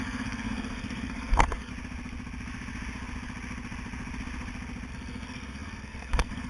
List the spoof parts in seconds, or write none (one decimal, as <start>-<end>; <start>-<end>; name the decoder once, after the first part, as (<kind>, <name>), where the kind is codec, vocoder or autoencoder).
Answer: 0.0-1.7 (codec, SNAC); 4.9-6.5